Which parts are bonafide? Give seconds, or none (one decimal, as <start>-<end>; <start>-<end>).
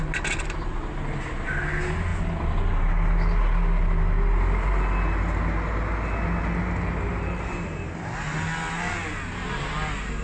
0.0-10.2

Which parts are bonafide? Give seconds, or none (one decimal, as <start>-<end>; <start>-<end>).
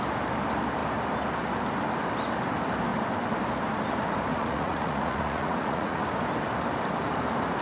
0.0-4.3; 6.0-7.6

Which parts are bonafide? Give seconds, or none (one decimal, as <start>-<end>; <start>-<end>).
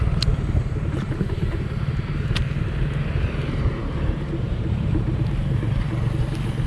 5.9-6.7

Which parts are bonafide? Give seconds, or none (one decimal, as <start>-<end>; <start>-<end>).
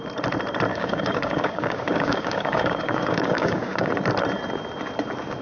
0.0-0.7; 3.9-5.4